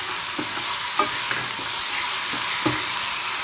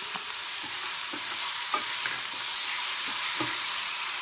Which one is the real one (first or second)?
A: first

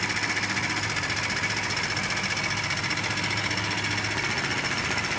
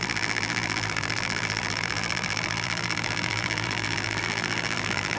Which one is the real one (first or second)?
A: first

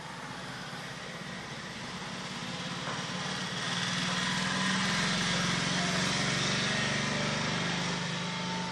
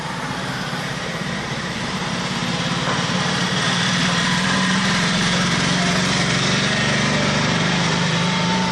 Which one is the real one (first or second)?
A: first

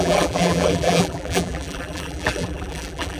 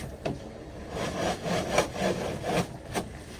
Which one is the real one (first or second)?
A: second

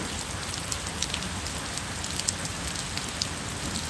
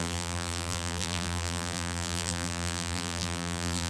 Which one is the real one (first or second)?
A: first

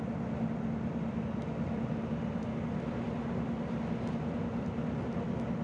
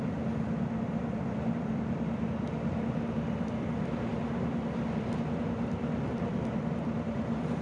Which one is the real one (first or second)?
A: first